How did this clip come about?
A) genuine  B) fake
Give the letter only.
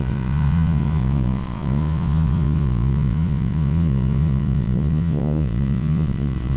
B